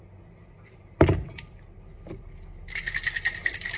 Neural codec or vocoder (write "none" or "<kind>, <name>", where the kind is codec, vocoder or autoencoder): none